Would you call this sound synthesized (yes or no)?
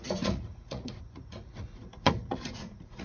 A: yes